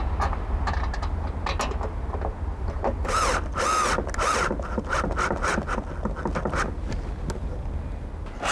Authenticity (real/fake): real